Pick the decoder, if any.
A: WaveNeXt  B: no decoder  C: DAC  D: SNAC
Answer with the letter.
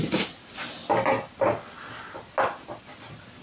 B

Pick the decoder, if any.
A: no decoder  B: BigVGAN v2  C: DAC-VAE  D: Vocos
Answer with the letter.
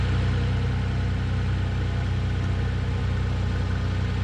A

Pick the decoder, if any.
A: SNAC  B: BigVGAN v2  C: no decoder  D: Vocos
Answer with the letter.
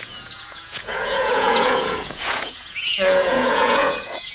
D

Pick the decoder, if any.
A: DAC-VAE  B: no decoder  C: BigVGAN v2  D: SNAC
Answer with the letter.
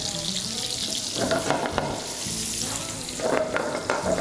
C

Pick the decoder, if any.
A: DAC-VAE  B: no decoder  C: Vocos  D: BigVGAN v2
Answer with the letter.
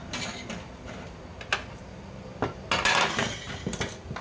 B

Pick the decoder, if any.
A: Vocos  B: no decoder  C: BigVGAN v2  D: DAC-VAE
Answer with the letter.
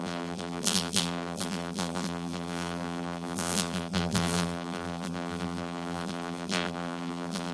C